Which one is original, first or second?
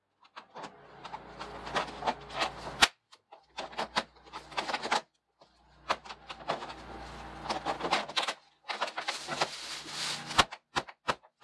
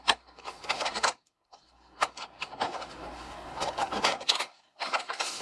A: first